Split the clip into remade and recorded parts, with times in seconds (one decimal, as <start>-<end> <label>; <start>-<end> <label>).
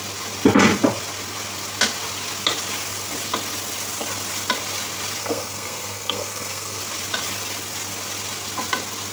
0.0-5.2 recorded; 5.2-6.8 remade; 6.8-9.1 recorded